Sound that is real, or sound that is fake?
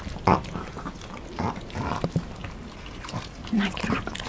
real